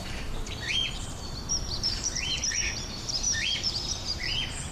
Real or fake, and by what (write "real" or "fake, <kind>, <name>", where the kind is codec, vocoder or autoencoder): fake, vocoder, BigVGAN v2